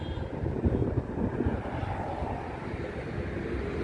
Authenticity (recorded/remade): recorded